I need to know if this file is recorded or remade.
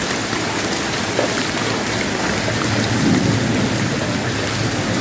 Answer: recorded